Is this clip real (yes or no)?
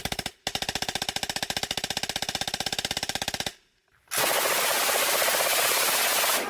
yes